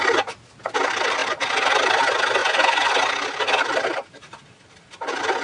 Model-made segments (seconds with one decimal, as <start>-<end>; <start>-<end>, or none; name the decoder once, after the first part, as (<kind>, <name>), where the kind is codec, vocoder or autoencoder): 2.4-2.9 (vocoder, Vocos)